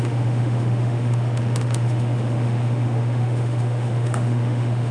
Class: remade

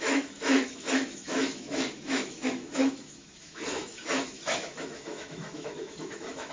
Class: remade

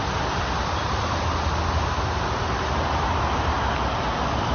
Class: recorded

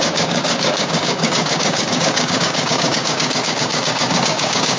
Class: remade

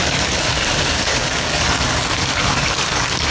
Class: remade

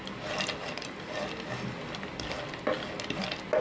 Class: recorded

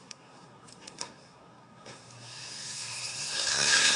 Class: remade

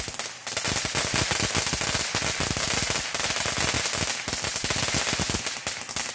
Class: recorded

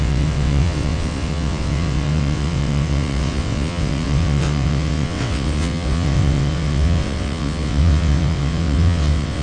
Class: remade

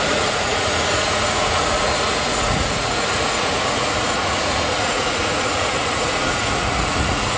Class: remade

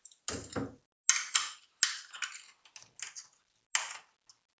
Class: recorded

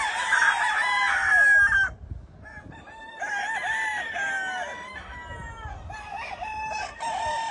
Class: recorded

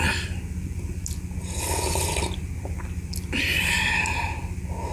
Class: recorded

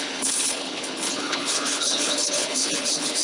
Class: remade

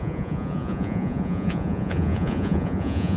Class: remade